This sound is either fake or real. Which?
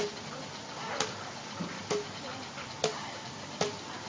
real